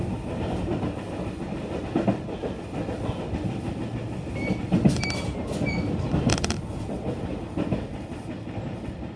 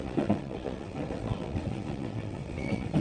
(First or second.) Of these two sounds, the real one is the first